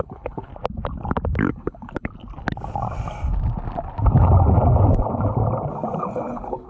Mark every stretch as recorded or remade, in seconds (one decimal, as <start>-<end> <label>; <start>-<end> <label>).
0.0-0.5 remade; 0.5-1.4 recorded; 1.4-2.1 remade; 2.1-6.0 recorded; 6.0-6.7 remade